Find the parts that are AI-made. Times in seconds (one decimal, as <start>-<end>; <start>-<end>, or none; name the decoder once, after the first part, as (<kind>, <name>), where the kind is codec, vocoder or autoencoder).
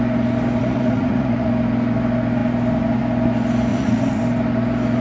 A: 0.6-1.5 (vocoder, Vocos); 3.7-4.2